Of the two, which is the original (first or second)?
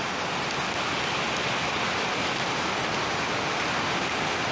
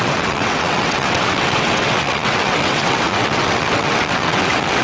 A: first